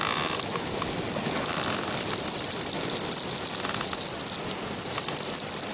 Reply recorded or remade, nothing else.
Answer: recorded